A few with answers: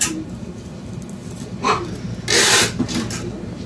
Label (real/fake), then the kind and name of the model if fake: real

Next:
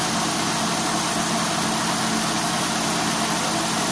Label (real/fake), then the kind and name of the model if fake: real